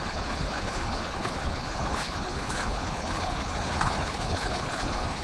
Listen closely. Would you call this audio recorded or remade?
remade